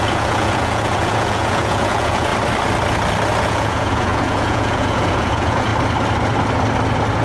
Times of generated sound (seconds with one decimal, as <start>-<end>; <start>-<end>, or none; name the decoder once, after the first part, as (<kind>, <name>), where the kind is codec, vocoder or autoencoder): 0.0-2.3 (vocoder, Vocos); 3.4-5.7